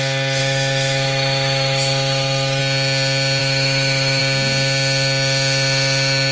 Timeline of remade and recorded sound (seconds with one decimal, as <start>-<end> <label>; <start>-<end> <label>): 0.0-0.4 recorded; 0.4-2.6 remade; 2.6-3.4 recorded; 3.4-4.2 remade; 4.2-6.3 recorded